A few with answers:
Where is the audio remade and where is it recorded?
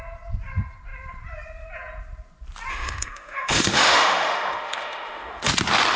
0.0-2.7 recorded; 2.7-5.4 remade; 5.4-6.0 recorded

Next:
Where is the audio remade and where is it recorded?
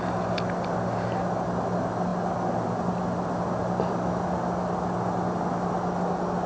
0.0-6.5 recorded